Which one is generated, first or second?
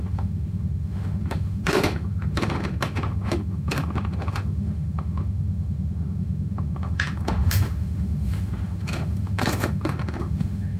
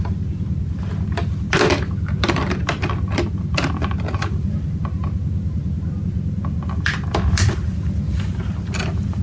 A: first